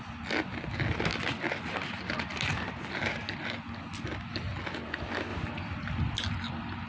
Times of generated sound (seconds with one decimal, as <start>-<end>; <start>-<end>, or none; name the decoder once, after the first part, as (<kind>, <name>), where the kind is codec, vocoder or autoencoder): none